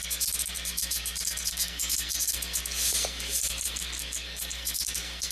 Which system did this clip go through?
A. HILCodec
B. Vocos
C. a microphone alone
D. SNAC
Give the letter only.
D